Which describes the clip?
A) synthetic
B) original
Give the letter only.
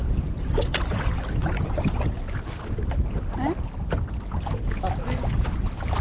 B